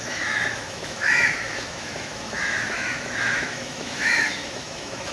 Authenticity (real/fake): fake